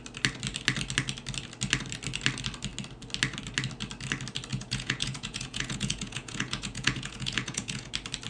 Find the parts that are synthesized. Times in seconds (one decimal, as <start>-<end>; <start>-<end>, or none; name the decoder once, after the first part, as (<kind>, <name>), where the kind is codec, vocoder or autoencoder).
4.5-7.9 (vocoder, Vocos)